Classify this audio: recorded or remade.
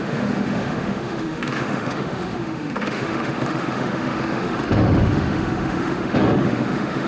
remade